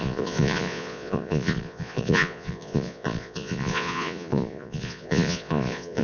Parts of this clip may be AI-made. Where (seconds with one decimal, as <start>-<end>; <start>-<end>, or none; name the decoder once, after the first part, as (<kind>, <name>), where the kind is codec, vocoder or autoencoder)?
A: 0.0-6.0 (vocoder, Vocos)